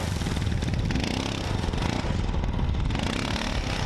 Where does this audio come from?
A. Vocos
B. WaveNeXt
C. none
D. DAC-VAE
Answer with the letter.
C